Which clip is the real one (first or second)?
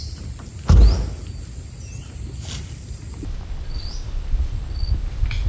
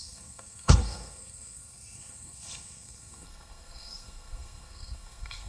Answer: first